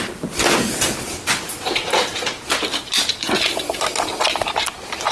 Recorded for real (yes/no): yes